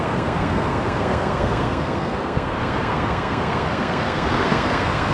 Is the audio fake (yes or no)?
yes